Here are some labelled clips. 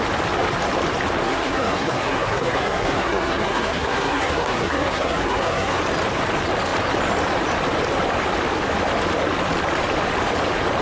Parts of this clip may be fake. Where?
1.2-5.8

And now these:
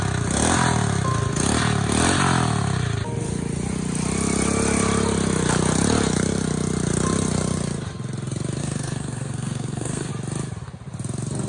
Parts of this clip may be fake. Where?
8.6-10.1

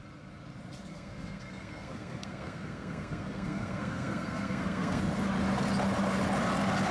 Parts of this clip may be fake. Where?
0.9-5.0

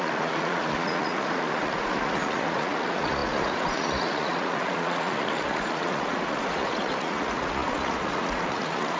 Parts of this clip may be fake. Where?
0.0-9.0

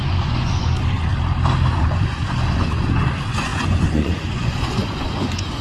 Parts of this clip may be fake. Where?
0.0-1.1; 1.7-5.6

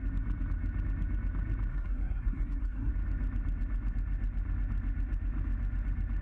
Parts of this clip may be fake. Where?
1.7-2.9

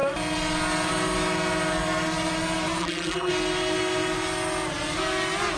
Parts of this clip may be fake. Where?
2.8-3.3

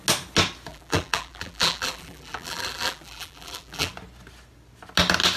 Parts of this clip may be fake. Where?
0.7-3.9